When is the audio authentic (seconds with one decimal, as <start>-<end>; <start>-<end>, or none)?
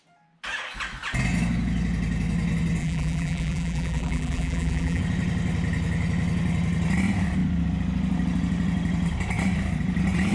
0.0-2.8; 5.0-10.3